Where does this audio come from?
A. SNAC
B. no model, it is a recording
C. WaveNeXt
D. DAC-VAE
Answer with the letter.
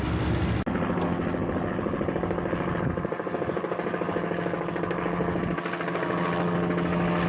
B